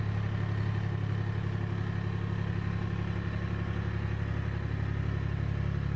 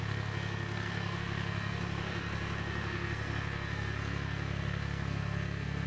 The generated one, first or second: second